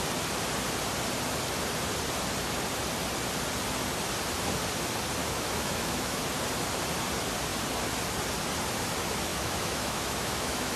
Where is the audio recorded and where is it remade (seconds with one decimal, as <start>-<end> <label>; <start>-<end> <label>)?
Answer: 0.0-5.2 recorded; 5.2-6.2 remade; 6.2-9.3 recorded; 9.3-10.8 remade